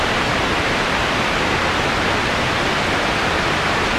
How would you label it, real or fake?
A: fake